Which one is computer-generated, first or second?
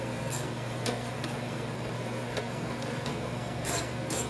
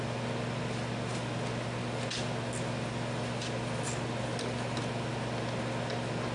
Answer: first